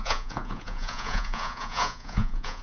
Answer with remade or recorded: remade